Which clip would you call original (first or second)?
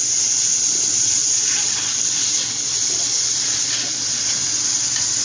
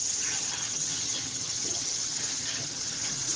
first